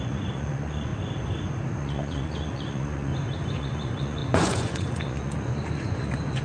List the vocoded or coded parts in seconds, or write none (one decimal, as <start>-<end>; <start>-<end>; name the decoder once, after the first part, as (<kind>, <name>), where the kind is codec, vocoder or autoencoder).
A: 0.0-0.9 (vocoder, Vocos); 1.8-3.1; 3.6-6.4